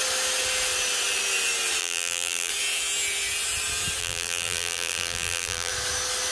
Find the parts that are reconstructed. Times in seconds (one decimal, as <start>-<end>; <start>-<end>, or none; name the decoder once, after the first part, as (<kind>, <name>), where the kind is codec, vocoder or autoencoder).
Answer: 1.8-2.5 (vocoder, BigVGAN v2); 4.0-5.7